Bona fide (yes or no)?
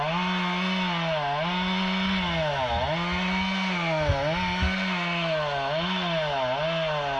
yes